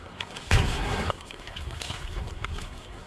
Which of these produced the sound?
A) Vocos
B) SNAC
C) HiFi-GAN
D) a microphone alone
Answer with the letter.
B